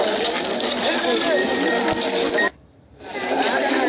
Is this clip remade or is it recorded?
recorded